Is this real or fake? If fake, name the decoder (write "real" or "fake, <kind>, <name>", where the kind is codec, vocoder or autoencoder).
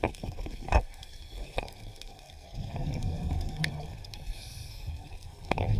fake, codec, SNAC